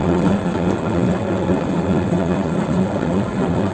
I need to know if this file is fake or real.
fake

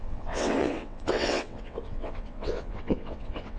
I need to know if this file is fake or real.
fake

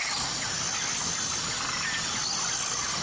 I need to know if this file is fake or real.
real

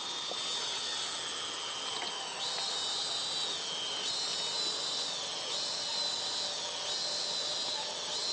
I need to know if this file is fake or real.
real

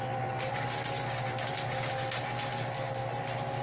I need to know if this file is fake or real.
real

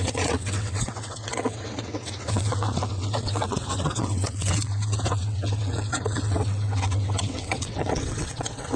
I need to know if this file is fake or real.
fake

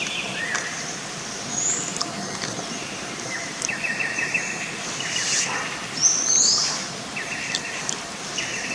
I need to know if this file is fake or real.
real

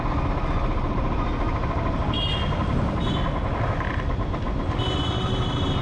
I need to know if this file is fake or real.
real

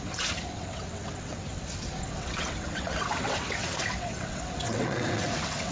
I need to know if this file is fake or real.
fake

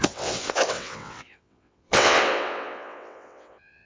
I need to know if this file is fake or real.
fake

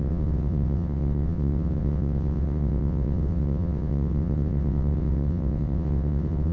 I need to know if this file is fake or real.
fake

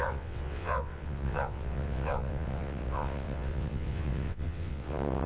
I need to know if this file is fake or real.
fake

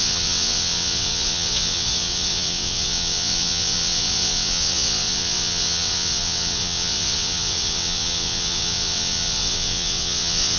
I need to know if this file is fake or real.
fake